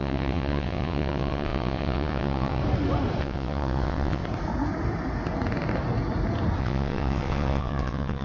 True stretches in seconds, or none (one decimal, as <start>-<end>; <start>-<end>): 2.6-3.2; 4.2-6.6